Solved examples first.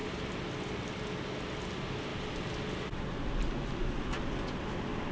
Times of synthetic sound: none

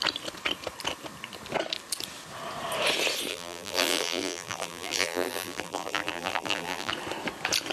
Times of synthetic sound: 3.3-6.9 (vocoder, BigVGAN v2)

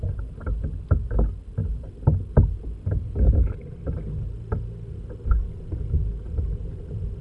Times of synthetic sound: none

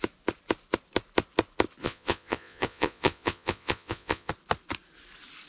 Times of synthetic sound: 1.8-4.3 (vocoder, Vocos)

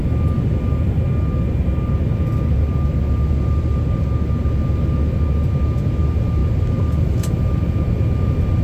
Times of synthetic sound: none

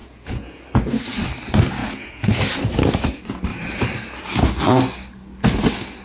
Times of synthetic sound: 0.0-0.6 (vocoder, Vocos); 1.8-2.3

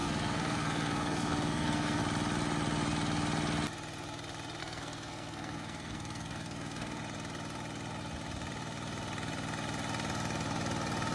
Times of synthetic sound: 0.0-2.0 (codec, SNAC); 4.6-7.0